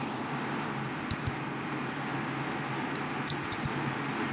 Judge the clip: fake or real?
real